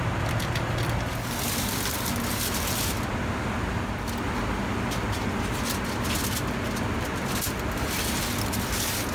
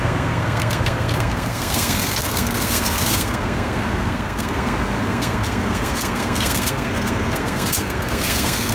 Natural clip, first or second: first